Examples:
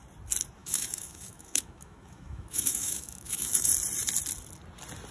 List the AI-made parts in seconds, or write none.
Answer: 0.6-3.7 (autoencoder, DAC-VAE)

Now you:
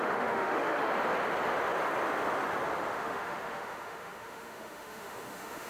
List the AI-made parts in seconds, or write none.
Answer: 0.0-0.9 (autoencoder, DAC-VAE); 2.9-5.7

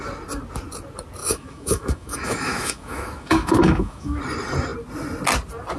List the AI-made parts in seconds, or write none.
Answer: 1.2-4.2 (autoencoder, DAC-VAE)

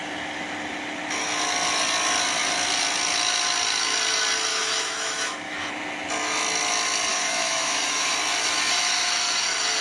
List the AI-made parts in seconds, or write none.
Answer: 4.5-5.7 (autoencoder, DAC-VAE); 7.1-8.1

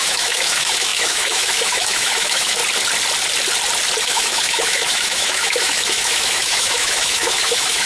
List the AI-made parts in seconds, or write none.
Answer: 0.0-2.6 (autoencoder, DAC-VAE); 4.0-7.9

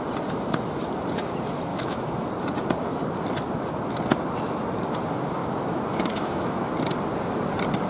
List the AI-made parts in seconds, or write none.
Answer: 1.7-2.3 (autoencoder, DAC-VAE); 5.4-6.7

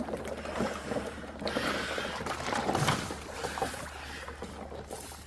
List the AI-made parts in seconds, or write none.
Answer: none